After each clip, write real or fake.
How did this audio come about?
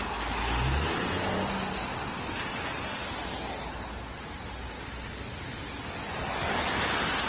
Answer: real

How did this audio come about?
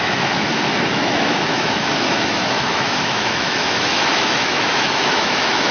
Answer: fake